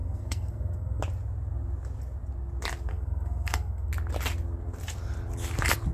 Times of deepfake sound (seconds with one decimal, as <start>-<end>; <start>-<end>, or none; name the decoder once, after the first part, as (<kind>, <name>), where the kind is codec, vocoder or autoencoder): 0.0-1.0 (codec, SNAC); 2.9-3.9